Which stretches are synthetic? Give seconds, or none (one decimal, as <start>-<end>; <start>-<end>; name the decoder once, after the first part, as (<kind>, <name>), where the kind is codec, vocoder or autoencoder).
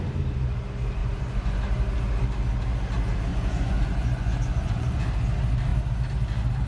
1.0-1.6 (vocoder, Vocos); 3.3-5.0